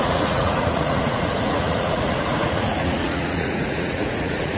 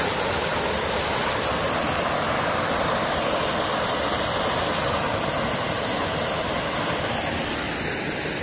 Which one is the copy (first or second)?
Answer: first